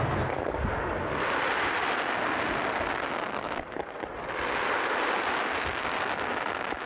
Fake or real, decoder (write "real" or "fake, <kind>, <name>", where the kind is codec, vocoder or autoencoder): real